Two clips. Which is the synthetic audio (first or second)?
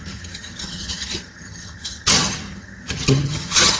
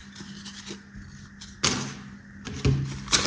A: first